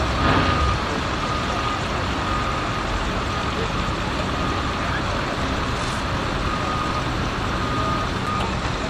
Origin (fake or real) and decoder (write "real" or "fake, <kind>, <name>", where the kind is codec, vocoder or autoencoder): real